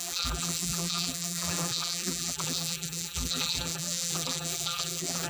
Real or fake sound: fake